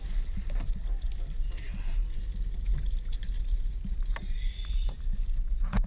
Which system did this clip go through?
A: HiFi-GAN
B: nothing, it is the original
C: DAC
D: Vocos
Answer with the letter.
B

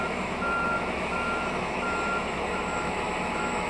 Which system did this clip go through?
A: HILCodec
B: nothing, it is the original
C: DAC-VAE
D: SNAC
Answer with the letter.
C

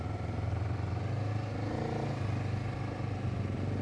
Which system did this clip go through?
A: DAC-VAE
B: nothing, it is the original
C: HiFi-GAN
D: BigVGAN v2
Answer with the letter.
B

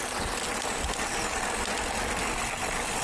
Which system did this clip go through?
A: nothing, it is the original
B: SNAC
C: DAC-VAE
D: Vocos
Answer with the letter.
A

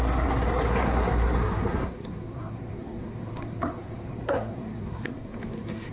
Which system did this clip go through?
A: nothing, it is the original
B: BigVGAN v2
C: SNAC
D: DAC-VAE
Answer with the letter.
C